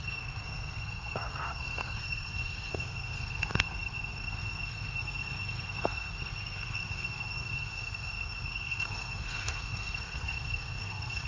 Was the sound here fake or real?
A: fake